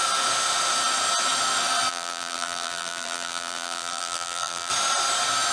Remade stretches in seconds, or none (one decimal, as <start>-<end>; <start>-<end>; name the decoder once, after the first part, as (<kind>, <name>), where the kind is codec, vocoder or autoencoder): 1.9-4.7 (vocoder, BigVGAN v2)